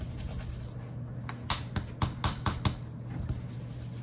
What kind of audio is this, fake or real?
real